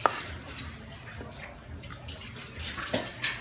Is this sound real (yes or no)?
yes